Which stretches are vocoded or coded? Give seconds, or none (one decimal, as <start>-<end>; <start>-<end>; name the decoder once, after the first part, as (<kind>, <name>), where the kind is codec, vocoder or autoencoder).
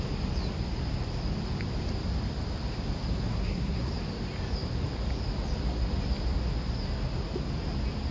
3.3-3.9 (codec, SNAC)